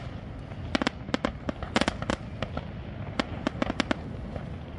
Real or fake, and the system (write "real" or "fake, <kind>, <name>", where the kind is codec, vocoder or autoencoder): real